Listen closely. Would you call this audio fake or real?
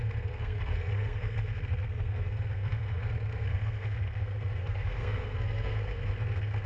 fake